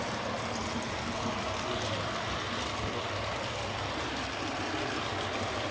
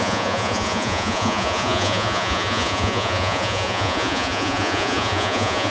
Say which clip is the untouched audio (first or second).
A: first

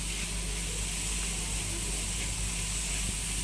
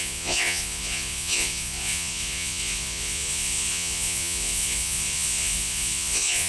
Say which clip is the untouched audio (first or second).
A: first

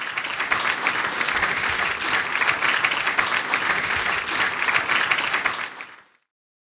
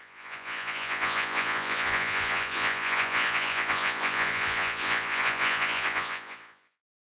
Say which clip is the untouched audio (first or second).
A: first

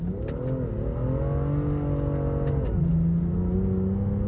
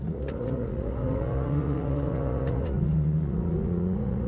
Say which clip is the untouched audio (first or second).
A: first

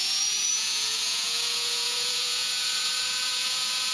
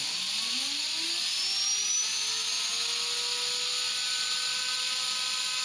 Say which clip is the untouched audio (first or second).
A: second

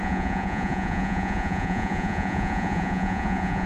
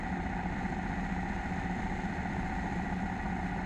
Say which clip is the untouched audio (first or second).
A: second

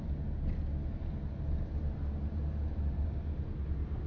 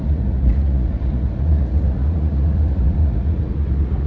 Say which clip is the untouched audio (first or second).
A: first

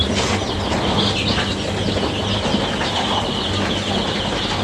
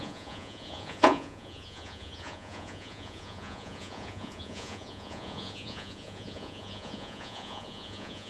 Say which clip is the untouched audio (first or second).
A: first